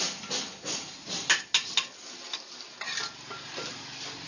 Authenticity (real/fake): real